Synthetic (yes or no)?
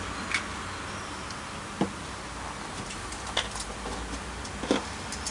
no